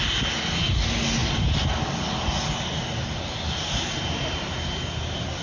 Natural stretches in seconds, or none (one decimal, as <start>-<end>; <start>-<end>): 0.0-5.4